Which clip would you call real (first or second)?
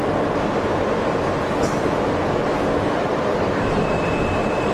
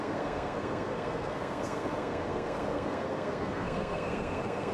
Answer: first